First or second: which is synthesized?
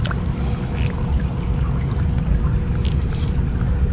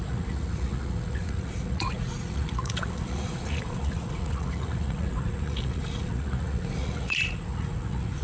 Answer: second